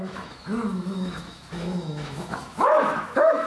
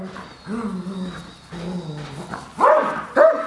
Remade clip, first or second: first